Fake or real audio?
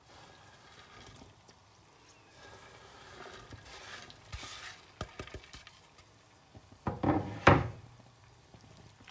real